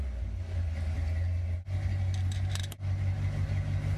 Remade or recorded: recorded